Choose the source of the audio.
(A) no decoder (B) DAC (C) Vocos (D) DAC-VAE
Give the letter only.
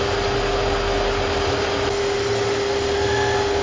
A